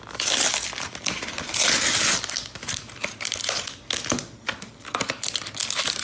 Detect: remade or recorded recorded